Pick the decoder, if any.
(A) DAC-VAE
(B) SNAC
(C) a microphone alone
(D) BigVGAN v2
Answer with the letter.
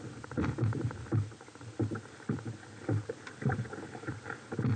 C